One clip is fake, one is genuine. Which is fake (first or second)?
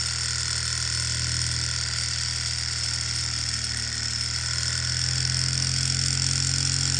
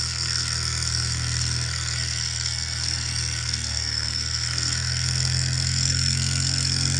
second